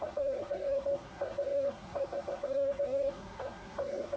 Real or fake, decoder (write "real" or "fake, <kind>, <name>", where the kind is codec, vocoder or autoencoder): fake, codec, SNAC